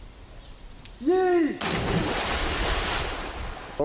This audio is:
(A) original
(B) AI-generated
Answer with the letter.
A